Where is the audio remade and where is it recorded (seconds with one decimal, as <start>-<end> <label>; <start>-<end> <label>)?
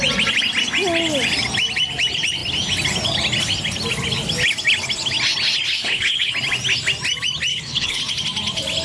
0.0-5.8 recorded; 5.8-6.3 remade; 6.3-7.5 recorded; 7.5-8.0 remade; 8.0-8.8 recorded